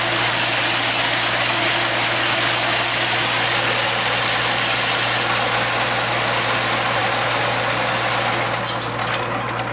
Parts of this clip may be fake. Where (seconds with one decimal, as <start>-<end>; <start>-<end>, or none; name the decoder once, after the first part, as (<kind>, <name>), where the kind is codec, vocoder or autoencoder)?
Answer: none